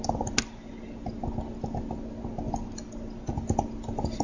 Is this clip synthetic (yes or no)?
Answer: no